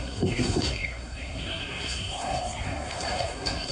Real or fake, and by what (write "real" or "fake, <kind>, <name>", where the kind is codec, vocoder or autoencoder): fake, codec, SNAC